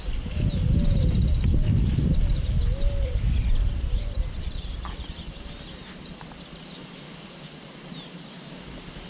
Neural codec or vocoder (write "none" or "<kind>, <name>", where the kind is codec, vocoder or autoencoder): none